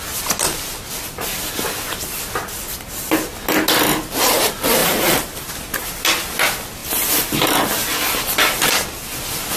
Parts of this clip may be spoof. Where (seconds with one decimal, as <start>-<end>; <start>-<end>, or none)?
4.8-5.5; 6.8-8.3